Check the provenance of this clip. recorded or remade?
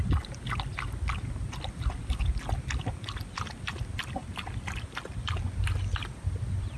recorded